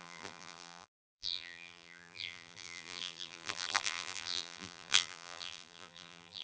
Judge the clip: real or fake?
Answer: fake